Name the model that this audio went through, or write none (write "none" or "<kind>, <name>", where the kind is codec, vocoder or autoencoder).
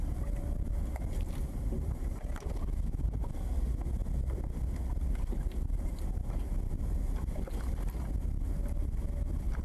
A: none